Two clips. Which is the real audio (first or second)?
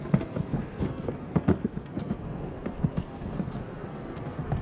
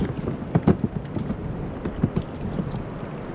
second